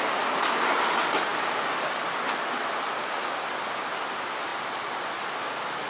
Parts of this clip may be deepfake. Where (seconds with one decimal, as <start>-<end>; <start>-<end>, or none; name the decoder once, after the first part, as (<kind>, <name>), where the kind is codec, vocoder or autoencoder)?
none